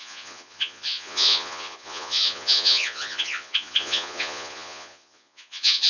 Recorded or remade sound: remade